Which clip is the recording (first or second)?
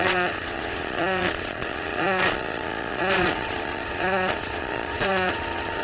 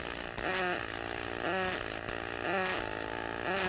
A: second